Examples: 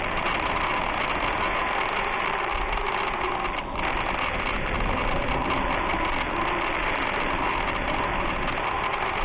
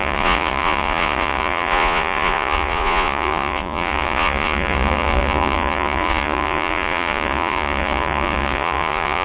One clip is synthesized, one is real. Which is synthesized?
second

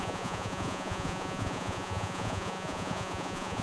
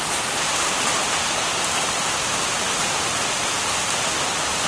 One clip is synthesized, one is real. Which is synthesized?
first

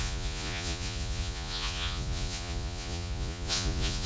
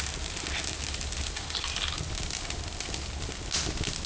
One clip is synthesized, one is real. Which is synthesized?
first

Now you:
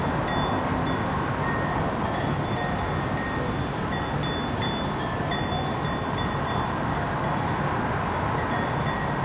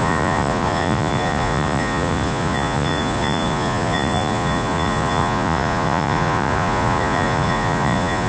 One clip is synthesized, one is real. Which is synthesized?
second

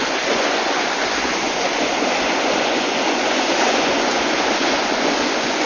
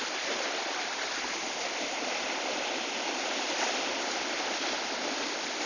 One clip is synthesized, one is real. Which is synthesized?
first